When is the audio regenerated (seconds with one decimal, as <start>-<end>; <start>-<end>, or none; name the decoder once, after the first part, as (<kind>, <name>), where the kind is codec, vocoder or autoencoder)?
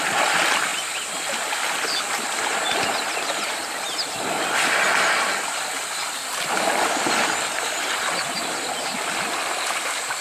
none